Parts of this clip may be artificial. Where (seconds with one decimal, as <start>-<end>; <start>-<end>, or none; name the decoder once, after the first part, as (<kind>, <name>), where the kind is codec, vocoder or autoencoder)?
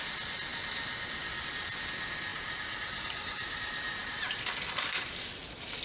2.3-4.4 (vocoder, BigVGAN v2)